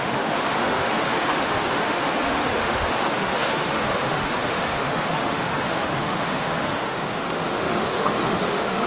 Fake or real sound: fake